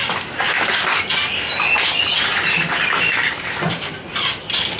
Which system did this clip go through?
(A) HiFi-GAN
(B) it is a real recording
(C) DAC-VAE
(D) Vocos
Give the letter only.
B